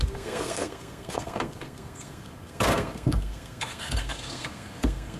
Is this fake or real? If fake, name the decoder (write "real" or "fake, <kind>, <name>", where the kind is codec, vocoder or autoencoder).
fake, codec, SNAC